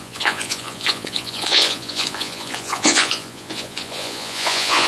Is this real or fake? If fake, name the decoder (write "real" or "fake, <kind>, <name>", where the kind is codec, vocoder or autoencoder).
fake, vocoder, Vocos